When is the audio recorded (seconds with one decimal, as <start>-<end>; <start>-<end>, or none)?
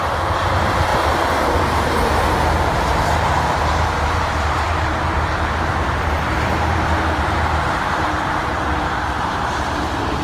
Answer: none